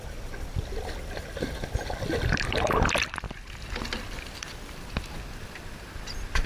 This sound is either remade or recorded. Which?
recorded